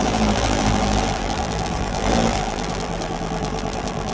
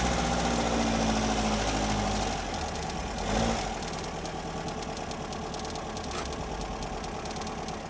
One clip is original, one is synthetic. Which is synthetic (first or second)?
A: first